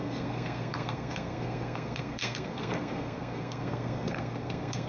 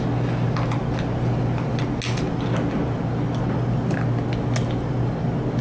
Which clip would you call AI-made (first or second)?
first